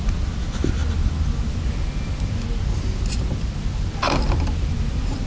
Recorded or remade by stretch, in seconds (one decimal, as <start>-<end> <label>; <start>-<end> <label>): 0.0-5.3 recorded